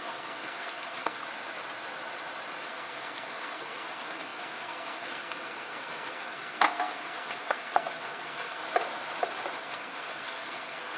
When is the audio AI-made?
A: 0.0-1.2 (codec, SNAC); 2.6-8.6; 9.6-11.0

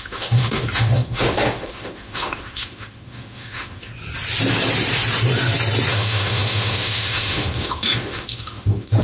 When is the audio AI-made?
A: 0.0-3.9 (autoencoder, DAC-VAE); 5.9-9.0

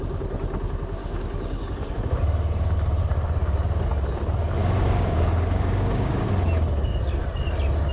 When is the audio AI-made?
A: 1.0-2.2 (codec, DAC); 4.6-6.3

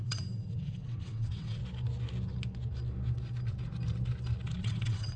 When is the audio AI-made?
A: 0.0-1.6 (vocoder, WaveNeXt); 4.6-5.2

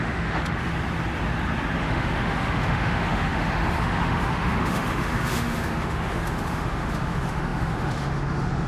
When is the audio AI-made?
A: 0.0-0.7 (autoencoder, DAC-VAE); 1.8-8.7

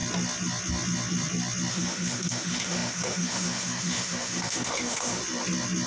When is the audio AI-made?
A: 1.7-5.2 (autoencoder, DAC-VAE)

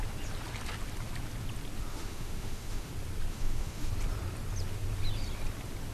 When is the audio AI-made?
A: 1.9-2.9 (autoencoder, DAC-VAE); 3.3-3.9